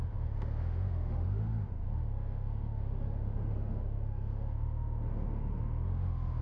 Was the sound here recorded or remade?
remade